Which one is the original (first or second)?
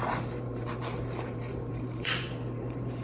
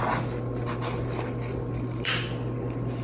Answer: second